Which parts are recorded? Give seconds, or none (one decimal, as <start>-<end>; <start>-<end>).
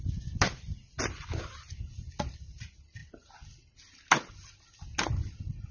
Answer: 0.0-5.7